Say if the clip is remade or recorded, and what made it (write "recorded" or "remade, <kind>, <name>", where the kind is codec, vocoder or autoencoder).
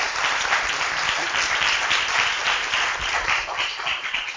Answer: remade, vocoder, BigVGAN v2